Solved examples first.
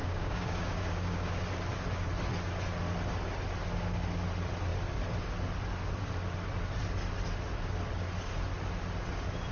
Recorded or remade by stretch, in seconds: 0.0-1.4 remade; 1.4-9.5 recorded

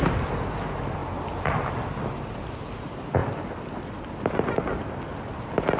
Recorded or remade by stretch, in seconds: 0.0-5.8 recorded

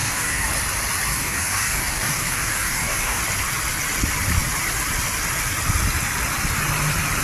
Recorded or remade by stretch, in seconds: 0.0-0.5 remade; 0.5-1.1 recorded; 1.1-3.2 remade; 3.2-7.2 recorded

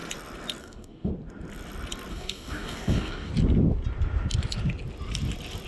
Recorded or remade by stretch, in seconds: 0.0-0.6 recorded; 0.6-1.1 remade; 1.1-2.1 recorded; 2.1-3.3 remade; 3.3-5.7 recorded